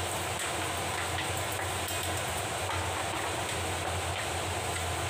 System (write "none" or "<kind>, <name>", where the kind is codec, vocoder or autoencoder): none